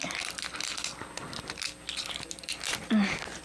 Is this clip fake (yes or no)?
no